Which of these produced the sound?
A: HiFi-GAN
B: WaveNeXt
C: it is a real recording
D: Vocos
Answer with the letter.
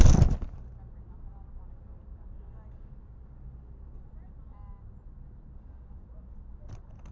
C